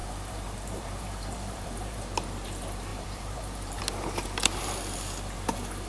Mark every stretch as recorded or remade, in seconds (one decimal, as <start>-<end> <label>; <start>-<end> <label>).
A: 0.0-2.0 remade; 2.0-2.9 recorded; 2.9-3.8 remade; 3.8-5.9 recorded